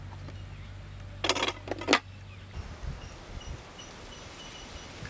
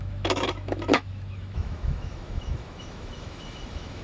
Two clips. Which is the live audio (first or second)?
first